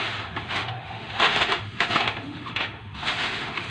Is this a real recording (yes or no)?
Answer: no